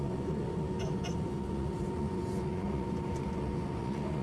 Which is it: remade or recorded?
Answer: remade